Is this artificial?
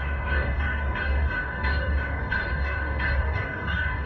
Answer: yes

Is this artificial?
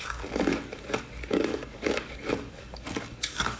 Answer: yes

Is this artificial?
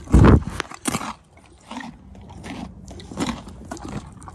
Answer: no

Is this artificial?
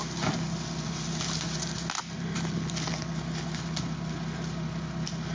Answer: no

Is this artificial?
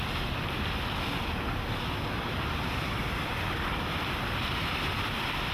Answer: no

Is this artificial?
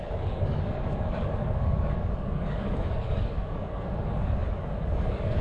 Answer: yes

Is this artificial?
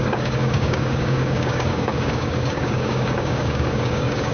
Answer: yes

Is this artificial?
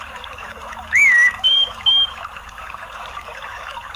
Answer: yes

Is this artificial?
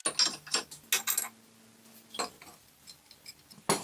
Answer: no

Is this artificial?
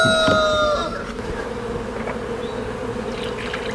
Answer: no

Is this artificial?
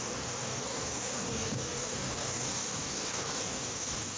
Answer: yes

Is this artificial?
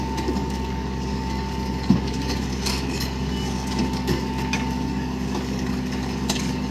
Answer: yes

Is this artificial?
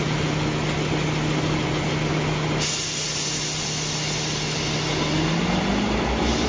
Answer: no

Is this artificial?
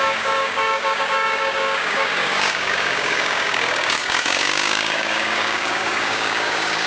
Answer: yes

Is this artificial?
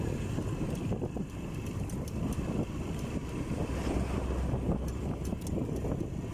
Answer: no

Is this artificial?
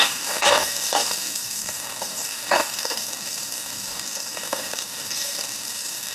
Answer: yes